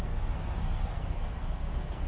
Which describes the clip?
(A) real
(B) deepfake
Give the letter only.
B